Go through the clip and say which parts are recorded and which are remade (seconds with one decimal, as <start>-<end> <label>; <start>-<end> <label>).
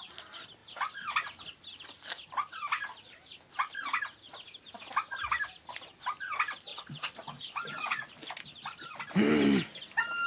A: 0.0-6.7 recorded; 6.7-8.1 remade; 8.1-10.3 recorded